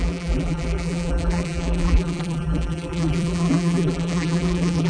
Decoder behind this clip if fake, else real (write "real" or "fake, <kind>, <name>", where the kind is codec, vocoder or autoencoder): fake, vocoder, BigVGAN v2